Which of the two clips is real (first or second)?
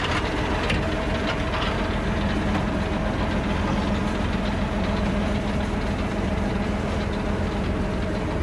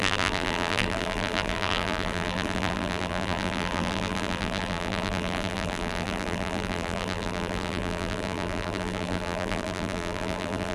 first